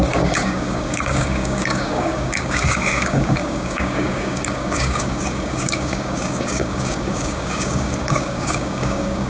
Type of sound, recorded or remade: remade